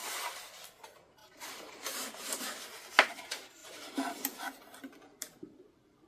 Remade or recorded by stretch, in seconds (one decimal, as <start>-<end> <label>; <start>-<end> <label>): 0.0-0.6 remade; 0.6-1.2 recorded; 1.2-1.8 remade; 1.8-3.6 recorded; 3.6-6.1 remade